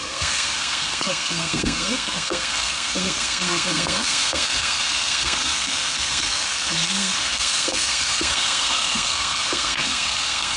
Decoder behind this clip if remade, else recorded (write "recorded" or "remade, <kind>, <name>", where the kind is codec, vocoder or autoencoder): remade, codec, SNAC